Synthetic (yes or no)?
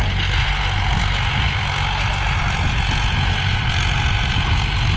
no